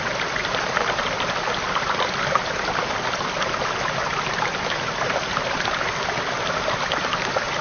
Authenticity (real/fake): real